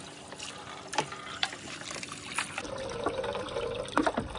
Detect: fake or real real